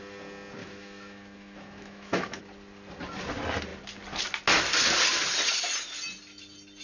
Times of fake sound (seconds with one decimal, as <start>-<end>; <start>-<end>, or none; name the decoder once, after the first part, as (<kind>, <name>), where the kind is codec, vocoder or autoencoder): 0.6-2.4 (autoencoder, DAC-VAE)